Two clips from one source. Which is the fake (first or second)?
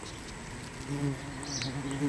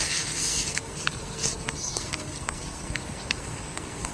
second